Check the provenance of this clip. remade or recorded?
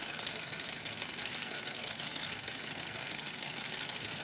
remade